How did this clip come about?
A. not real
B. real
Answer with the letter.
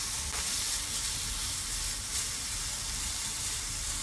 B